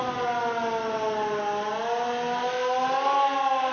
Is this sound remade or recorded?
recorded